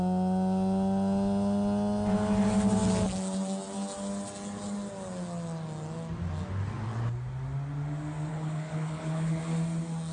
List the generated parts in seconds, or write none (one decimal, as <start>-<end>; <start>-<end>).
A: 8.3-9.4